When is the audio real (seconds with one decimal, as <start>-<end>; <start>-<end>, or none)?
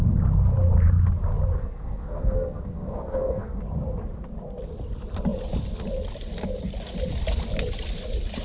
0.0-1.6; 3.6-8.4